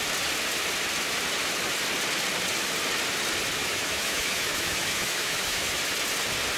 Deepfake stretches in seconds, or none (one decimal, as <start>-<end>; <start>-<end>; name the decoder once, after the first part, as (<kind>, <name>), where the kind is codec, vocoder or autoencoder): 3.6-5.8 (autoencoder, DAC-VAE)